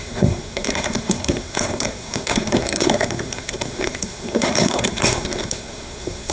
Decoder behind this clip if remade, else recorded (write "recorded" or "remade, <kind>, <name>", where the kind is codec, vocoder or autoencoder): remade, codec, SNAC